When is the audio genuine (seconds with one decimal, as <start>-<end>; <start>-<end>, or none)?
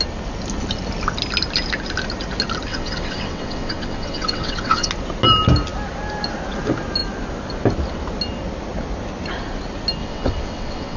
0.0-2.7; 4.9-10.0